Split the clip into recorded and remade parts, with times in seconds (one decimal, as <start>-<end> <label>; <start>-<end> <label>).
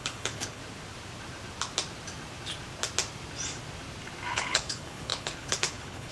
0.0-0.6 remade; 0.6-4.3 recorded; 4.3-6.1 remade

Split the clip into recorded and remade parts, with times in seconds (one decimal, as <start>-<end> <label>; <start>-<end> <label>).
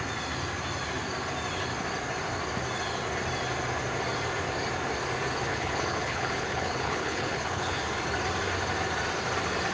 0.0-5.5 recorded; 5.5-7.8 remade; 7.8-9.7 recorded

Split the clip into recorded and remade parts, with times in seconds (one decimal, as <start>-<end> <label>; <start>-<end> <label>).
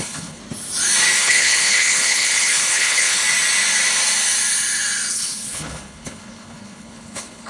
0.0-0.4 remade; 0.4-1.2 recorded; 1.2-3.2 remade; 3.2-5.1 recorded; 5.1-7.5 remade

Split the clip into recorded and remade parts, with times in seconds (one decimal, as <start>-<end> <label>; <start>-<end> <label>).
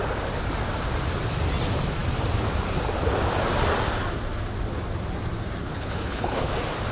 0.0-5.6 recorded; 5.6-6.5 remade; 6.5-6.9 recorded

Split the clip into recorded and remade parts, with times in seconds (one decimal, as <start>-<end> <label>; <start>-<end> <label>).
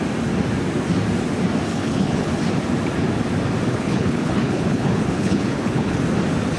0.0-1.7 recorded; 1.7-2.3 remade; 2.3-3.7 recorded; 3.7-6.0 remade; 6.0-6.6 recorded